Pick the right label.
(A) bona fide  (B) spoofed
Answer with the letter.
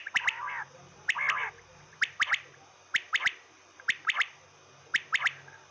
A